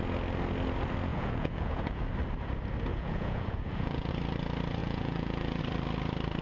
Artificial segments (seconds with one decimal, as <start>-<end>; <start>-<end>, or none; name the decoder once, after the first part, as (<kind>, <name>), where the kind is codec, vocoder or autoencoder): 1.1-2.0 (vocoder, Vocos); 2.9-4.1; 4.8-5.6